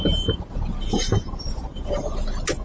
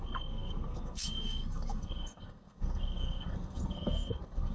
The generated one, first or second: second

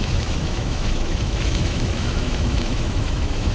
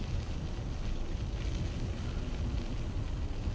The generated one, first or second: first